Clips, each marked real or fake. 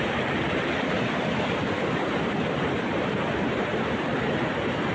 real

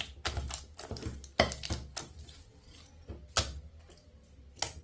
real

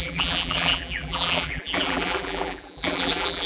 fake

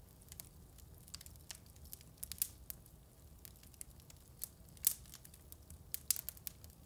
real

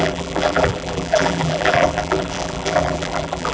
fake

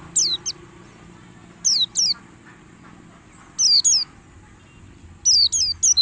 real